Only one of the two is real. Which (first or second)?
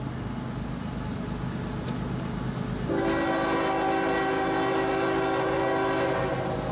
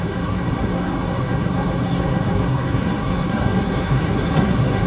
first